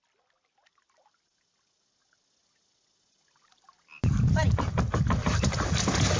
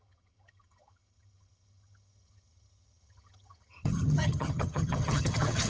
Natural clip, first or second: first